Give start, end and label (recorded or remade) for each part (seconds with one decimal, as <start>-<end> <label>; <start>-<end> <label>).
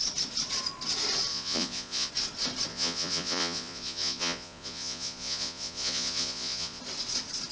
0.0-1.3 recorded; 1.3-2.1 remade; 2.1-2.7 recorded; 2.7-6.8 remade; 6.8-7.5 recorded